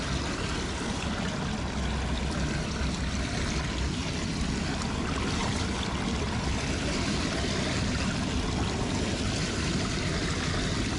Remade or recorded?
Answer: recorded